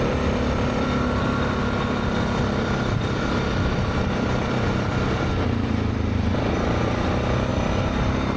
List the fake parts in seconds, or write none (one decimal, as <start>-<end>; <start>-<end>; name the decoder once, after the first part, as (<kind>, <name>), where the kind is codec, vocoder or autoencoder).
0.0-7.5 (vocoder, BigVGAN v2)